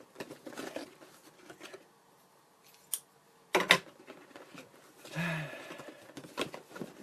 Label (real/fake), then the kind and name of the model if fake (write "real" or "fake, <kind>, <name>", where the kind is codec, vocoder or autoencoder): real